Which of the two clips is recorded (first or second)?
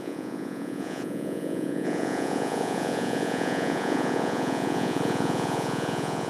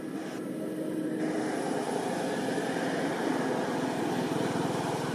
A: second